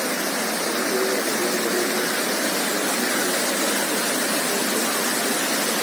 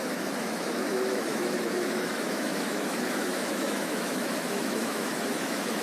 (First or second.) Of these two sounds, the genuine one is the first